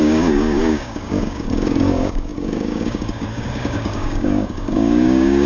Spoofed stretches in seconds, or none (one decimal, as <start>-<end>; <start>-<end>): 0.0-5.5